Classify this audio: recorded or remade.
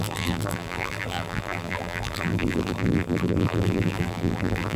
remade